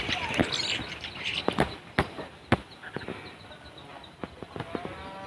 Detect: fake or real real